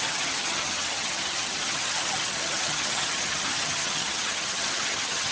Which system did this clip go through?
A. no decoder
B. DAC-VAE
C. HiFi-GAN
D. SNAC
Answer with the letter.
C